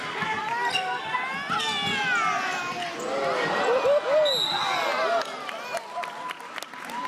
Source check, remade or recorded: recorded